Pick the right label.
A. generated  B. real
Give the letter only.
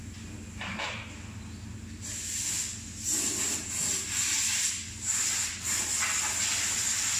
B